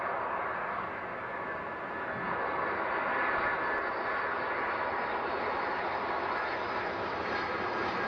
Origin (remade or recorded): recorded